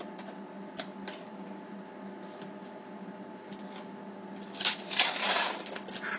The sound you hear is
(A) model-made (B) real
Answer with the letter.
B